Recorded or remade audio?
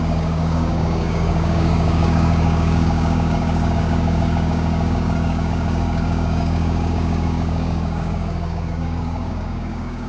remade